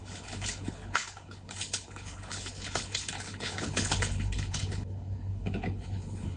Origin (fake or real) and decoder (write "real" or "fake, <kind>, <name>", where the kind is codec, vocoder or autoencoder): fake, codec, HILCodec